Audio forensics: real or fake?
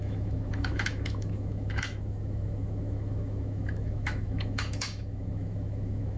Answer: fake